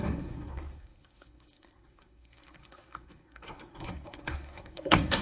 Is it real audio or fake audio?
fake